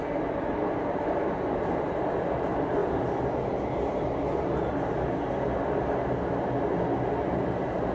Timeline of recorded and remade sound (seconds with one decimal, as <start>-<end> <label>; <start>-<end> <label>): 0.0-7.9 recorded